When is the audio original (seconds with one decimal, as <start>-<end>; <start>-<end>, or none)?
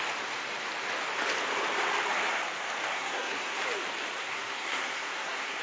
0.0-2.9; 3.6-4.2